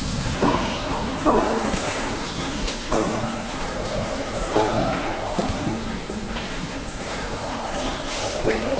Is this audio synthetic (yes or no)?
yes